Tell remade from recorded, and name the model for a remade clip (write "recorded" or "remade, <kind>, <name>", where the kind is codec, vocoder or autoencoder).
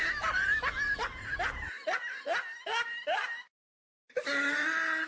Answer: recorded